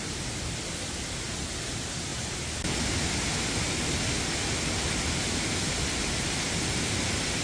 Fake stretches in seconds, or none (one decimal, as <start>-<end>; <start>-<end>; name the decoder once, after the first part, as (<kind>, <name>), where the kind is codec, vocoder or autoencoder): none